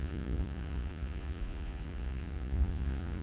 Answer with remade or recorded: remade